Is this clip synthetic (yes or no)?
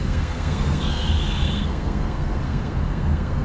yes